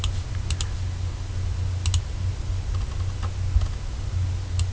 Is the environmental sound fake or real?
real